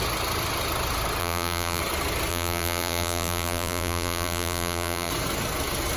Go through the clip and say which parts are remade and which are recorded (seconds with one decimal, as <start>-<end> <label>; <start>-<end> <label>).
0.0-1.2 recorded; 1.2-1.8 remade; 1.8-2.3 recorded; 2.3-5.1 remade; 5.1-6.0 recorded

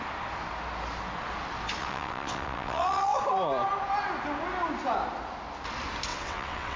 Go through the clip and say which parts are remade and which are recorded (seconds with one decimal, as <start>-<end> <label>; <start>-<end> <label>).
0.0-1.8 recorded; 1.8-3.2 remade; 3.2-6.1 recorded; 6.1-6.8 remade

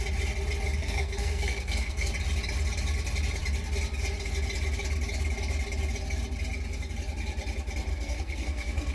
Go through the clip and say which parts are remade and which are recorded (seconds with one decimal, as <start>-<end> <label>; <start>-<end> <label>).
0.0-0.8 recorded; 0.8-2.1 remade; 2.1-7.9 recorded; 7.9-8.9 remade